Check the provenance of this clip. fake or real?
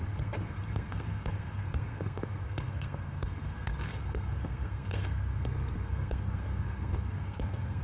fake